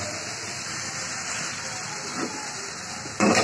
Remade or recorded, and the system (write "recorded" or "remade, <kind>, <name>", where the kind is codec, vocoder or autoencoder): recorded